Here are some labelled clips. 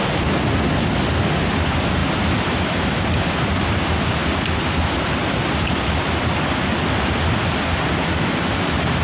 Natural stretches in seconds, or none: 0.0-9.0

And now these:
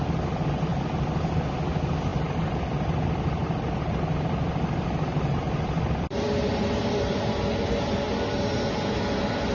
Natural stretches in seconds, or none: 0.0-3.4; 6.8-9.5

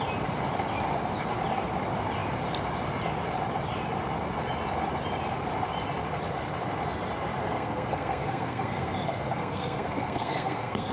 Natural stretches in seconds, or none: 0.0-7.4